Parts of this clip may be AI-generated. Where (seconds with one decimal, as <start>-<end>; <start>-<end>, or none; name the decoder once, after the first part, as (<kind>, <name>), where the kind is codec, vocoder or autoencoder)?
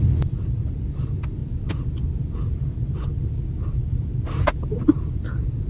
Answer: 0.0-1.4 (vocoder, BigVGAN v2); 4.8-5.7